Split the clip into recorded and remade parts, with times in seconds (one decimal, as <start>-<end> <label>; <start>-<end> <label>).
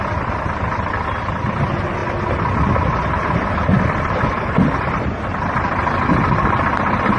0.0-7.2 recorded